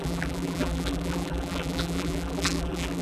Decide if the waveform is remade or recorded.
remade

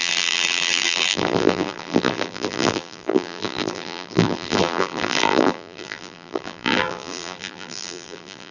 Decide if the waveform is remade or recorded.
remade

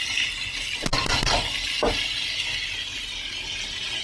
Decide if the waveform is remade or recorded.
recorded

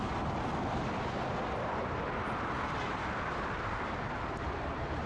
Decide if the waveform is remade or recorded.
remade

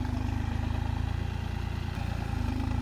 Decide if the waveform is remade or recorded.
recorded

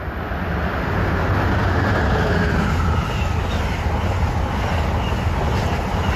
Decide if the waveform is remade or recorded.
recorded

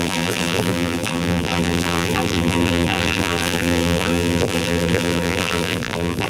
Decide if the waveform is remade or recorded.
remade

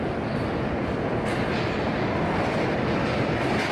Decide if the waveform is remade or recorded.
recorded